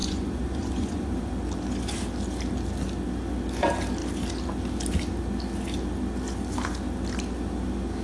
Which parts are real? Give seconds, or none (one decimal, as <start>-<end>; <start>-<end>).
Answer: 1.3-8.0